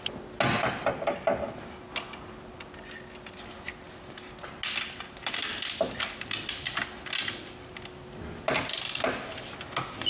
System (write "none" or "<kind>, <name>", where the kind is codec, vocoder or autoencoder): none